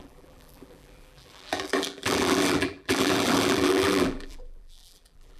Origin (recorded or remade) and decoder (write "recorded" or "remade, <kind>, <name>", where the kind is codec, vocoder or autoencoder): remade, vocoder, BigVGAN v2